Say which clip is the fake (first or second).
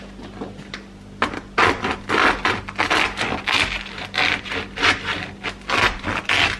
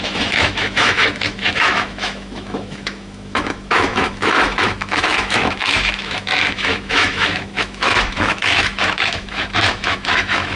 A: second